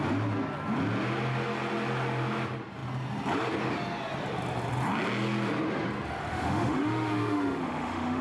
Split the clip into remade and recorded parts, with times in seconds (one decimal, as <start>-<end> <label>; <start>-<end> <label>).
0.0-6.3 recorded; 6.3-8.2 remade